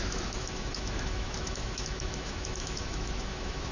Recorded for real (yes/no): no